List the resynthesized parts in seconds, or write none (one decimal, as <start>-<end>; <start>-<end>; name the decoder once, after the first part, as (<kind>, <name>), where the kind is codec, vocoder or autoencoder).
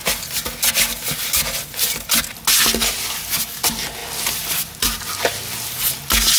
4.0-5.2 (vocoder, BigVGAN v2)